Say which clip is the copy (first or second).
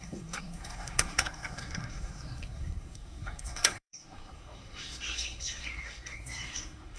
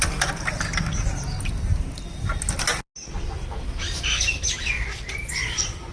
first